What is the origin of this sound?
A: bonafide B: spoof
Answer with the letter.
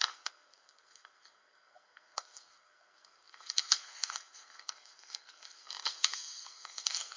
B